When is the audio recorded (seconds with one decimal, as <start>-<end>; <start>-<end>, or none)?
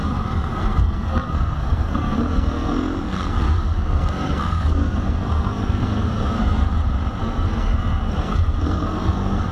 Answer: 6.7-7.2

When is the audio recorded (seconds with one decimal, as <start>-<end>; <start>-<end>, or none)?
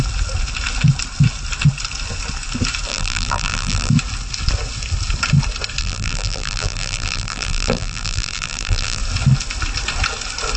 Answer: 0.0-2.9; 3.9-5.8; 9.0-10.6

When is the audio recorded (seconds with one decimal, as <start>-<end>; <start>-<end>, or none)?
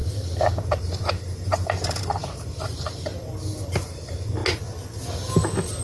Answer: 0.0-0.8; 3.1-3.8; 4.4-5.8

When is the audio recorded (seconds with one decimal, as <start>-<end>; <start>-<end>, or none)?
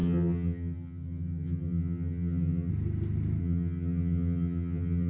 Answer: 2.7-3.4